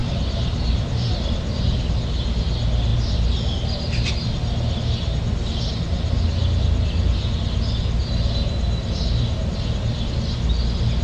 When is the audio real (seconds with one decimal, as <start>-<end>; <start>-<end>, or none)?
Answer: 2.0-11.0